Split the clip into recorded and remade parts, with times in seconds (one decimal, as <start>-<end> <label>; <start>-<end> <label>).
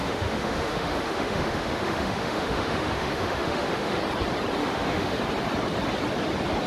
0.0-4.0 remade; 4.0-4.6 recorded; 4.6-5.2 remade; 5.2-6.7 recorded